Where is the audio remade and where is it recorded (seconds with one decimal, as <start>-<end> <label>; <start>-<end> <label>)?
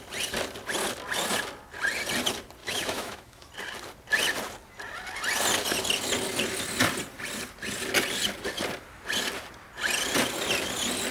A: 0.0-2.6 recorded; 2.6-3.5 remade; 3.5-11.1 recorded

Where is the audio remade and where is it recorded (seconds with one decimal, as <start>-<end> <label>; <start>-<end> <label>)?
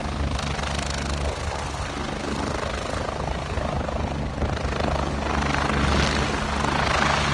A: 0.0-7.3 recorded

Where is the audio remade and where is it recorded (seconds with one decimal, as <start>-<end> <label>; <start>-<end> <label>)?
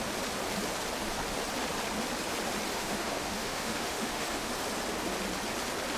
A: 0.0-2.7 recorded; 2.7-4.5 remade; 4.5-6.0 recorded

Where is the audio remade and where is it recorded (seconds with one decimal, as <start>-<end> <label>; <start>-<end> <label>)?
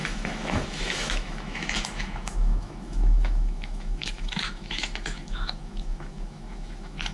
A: 0.0-7.1 remade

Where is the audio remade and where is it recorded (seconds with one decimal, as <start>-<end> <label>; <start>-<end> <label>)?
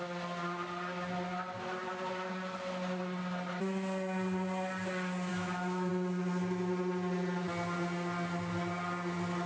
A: 0.0-5.3 recorded; 5.3-5.9 remade; 5.9-9.5 recorded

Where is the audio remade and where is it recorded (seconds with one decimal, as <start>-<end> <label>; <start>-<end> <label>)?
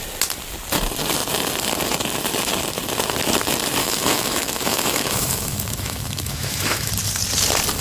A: 0.0-3.8 recorded; 3.8-6.9 remade; 6.9-7.8 recorded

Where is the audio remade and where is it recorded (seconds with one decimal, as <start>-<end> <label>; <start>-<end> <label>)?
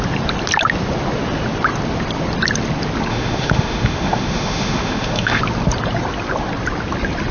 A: 0.0-3.1 recorded; 3.1-5.4 remade; 5.4-7.3 recorded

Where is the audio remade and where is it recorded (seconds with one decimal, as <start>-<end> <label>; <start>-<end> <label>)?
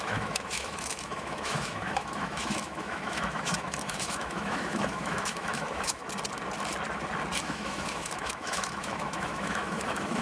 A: 0.0-6.0 remade; 6.0-7.4 recorded; 7.4-10.2 remade